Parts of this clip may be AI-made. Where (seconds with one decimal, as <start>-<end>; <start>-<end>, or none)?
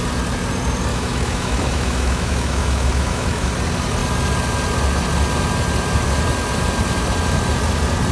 0.9-3.5